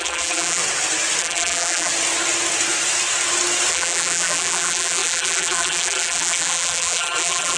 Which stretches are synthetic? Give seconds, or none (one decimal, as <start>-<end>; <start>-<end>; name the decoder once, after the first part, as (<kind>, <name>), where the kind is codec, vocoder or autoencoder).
0.0-0.6 (vocoder, BigVGAN v2); 1.2-1.9; 3.7-7.6